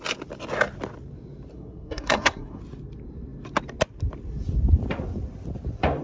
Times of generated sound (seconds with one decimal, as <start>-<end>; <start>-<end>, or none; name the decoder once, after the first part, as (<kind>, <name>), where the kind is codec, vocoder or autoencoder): 1.5-2.6 (codec, SNAC)